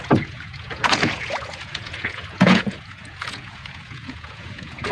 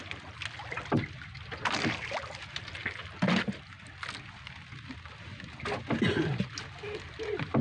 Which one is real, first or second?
second